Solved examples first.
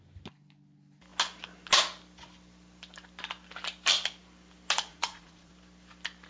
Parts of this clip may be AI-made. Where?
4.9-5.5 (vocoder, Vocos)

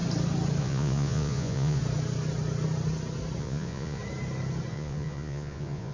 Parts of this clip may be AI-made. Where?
0.6-1.8 (vocoder, Vocos); 3.4-4.0; 4.7-5.9

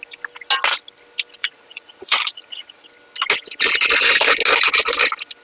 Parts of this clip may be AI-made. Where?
1.4-2.9 (vocoder, Vocos)

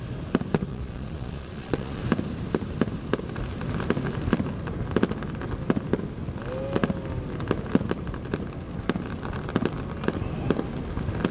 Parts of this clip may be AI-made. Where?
0.7-2.0 (vocoder, Vocos)

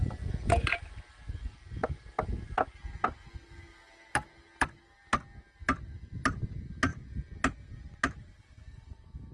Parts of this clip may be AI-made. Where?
none

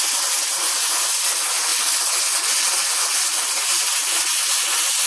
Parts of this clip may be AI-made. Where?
none